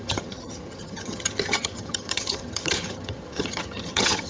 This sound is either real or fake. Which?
fake